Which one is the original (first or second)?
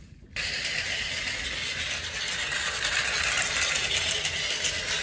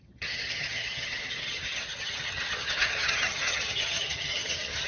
first